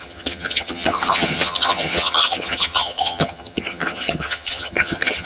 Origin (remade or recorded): remade